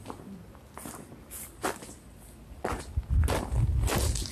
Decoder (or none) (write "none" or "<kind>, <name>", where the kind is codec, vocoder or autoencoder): none